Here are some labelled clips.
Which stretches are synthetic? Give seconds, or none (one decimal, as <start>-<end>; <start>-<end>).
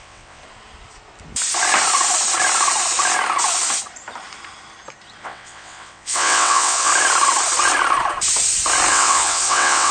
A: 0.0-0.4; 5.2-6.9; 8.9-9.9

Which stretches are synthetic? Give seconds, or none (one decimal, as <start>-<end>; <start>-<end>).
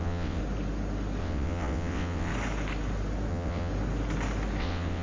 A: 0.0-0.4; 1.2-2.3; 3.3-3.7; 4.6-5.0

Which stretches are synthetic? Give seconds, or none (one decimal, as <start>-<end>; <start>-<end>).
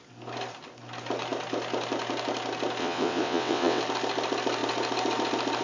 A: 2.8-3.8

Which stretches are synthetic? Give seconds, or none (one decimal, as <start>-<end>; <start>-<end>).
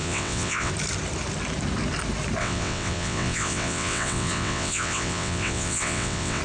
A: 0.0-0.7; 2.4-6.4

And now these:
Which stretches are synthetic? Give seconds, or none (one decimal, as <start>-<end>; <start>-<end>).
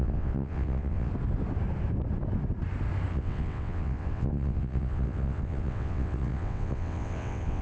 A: 0.0-1.1; 3.1-7.6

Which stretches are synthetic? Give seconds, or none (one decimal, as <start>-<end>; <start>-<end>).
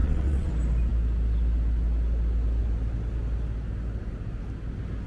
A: 0.0-0.5